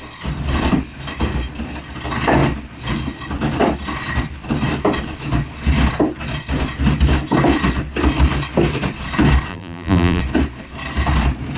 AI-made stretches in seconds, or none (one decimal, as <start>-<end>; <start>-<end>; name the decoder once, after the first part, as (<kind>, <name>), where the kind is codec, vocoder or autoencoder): 9.5-10.2 (vocoder, BigVGAN v2)